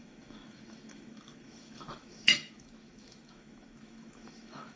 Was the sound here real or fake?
fake